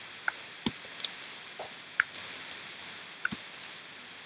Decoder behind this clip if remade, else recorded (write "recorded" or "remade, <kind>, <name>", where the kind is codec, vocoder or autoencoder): remade, vocoder, BigVGAN v2